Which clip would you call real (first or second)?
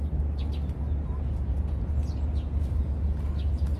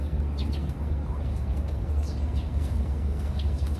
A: first